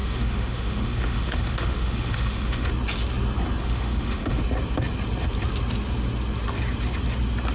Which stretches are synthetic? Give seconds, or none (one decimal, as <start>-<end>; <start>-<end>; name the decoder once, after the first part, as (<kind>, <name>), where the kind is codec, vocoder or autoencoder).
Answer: 0.0-2.7 (autoencoder, DAC-VAE); 3.6-4.4